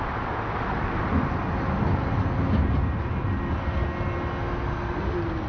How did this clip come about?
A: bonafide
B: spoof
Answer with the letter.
A